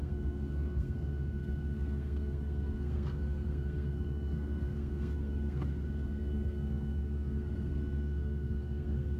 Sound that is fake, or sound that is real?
fake